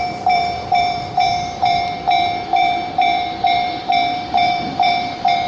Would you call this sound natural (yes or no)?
no